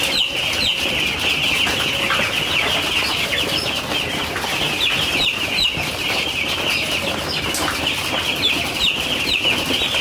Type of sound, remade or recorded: recorded